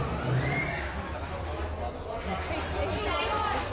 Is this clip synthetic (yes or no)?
no